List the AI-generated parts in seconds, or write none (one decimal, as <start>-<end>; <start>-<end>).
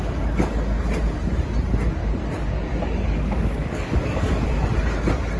2.0-4.6